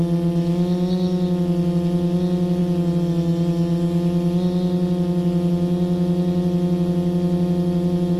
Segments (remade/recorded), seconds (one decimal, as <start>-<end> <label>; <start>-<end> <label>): 0.0-8.2 recorded